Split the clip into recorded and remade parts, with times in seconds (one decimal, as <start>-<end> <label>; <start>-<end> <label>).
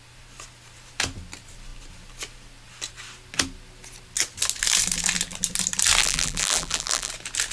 0.0-6.0 recorded; 6.0-7.1 remade; 7.1-7.5 recorded